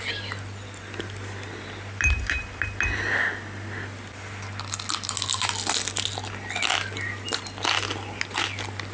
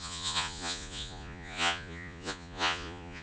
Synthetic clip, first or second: second